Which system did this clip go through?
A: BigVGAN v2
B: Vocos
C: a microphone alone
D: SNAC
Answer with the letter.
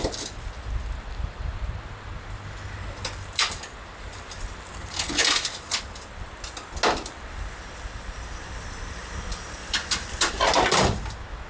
C